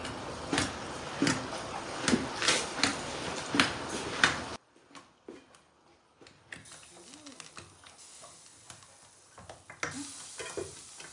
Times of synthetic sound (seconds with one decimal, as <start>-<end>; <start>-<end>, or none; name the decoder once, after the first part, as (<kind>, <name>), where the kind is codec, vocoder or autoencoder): none